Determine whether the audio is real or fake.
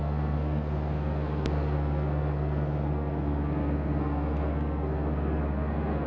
fake